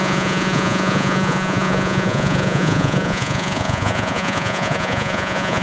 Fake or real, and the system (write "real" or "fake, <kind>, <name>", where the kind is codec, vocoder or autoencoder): fake, vocoder, Vocos